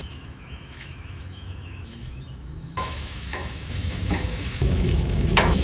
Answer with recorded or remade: remade